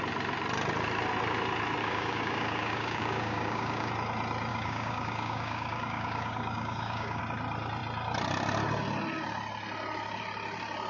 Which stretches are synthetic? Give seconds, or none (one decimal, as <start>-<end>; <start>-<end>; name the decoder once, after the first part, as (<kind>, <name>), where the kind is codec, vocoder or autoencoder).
1.8-3.9 (codec, DAC); 4.5-7.2